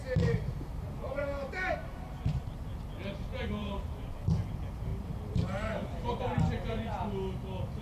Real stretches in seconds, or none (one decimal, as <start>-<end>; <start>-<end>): 0.0-1.8; 2.7-3.6; 4.4-4.9; 6.2-7.8